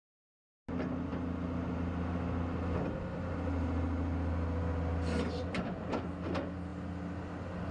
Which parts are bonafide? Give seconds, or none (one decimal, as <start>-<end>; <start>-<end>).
0.0-7.7